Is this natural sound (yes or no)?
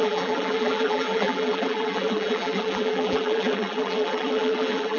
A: no